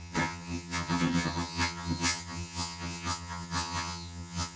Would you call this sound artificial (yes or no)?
yes